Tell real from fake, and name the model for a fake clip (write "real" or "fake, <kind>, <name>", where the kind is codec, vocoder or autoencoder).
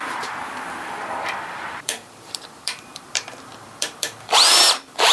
fake, vocoder, BigVGAN v2